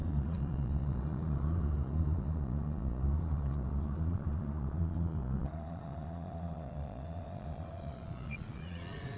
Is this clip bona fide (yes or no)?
no